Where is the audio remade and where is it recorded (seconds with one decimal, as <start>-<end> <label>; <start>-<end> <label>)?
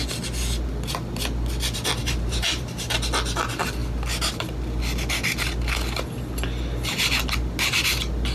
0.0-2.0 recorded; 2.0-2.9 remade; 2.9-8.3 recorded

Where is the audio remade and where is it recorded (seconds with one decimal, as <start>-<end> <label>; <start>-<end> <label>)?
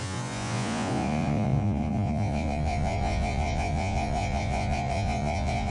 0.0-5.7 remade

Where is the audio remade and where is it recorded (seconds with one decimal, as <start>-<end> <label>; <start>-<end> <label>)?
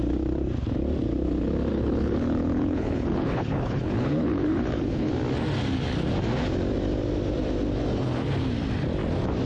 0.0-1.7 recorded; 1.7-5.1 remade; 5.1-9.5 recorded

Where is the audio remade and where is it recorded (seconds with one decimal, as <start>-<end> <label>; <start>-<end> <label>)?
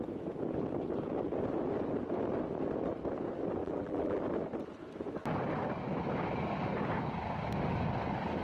0.0-3.6 recorded; 3.6-4.2 remade; 4.2-8.4 recorded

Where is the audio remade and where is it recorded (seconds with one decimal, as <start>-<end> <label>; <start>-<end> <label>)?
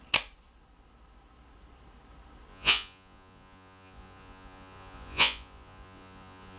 0.0-2.5 recorded; 2.5-6.6 remade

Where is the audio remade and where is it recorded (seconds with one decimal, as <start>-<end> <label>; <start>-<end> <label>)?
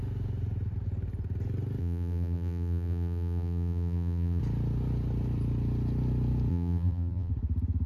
0.0-1.8 recorded; 1.8-4.4 remade; 4.4-6.5 recorded; 6.5-7.3 remade; 7.3-7.9 recorded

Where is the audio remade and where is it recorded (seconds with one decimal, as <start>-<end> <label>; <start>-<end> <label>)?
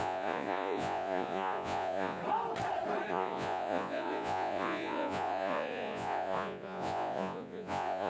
0.0-2.2 remade; 2.2-3.1 recorded; 3.1-8.1 remade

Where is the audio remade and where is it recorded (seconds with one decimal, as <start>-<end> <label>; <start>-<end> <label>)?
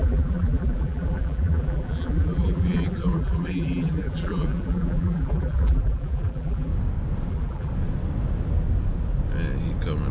0.0-6.7 remade; 6.7-7.3 recorded; 7.3-7.7 remade; 7.7-10.1 recorded